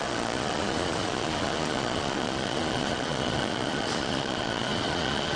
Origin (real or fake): fake